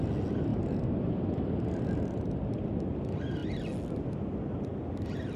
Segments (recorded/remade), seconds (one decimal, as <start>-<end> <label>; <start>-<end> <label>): 0.0-5.4 recorded